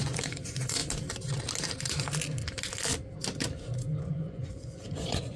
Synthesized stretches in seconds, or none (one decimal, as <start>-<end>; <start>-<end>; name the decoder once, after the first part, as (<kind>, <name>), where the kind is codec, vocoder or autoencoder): 0.0-0.8 (vocoder, Vocos); 4.0-5.4